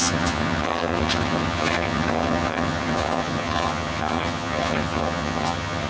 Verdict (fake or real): fake